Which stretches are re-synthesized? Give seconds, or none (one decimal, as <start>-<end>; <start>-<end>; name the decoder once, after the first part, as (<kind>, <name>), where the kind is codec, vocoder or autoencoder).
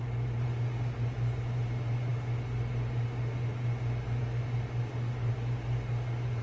none